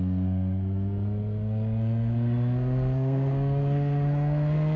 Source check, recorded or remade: remade